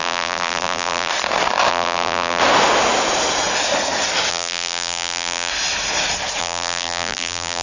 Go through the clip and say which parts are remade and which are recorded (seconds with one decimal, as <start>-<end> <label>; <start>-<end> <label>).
0.0-1.1 remade; 1.1-1.7 recorded; 1.7-2.4 remade; 2.4-4.3 recorded; 4.3-5.5 remade; 5.5-6.4 recorded; 6.4-7.6 remade